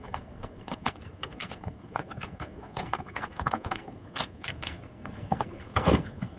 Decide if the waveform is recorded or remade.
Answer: remade